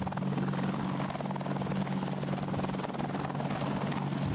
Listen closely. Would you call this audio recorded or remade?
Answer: recorded